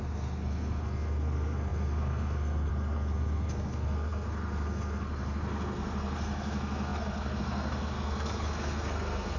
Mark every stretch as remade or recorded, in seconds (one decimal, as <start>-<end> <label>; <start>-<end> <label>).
0.0-9.4 remade

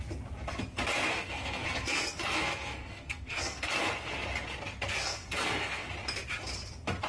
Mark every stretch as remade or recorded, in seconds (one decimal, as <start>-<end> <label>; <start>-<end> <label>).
0.0-1.1 recorded; 1.1-3.7 remade; 3.7-5.0 recorded; 5.0-5.9 remade; 5.9-7.1 recorded

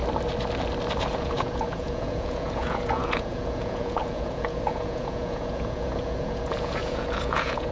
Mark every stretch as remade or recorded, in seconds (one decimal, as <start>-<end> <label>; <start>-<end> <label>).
0.0-1.0 recorded; 1.0-7.7 remade

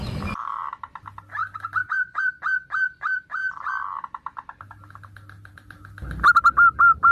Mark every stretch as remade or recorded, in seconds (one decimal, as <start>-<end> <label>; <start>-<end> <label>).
0.0-7.1 recorded

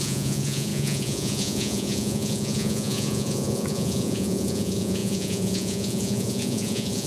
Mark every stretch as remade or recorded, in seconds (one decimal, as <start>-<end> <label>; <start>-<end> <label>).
0.0-7.1 remade

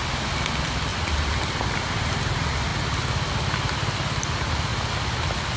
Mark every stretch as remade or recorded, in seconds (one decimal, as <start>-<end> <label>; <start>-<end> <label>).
0.0-5.6 recorded

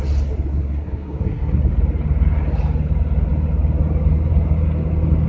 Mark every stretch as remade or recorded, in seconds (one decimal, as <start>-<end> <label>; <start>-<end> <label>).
0.0-0.5 recorded; 0.5-1.7 remade; 1.7-5.3 recorded